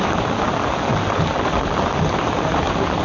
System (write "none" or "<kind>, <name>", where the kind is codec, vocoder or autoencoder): none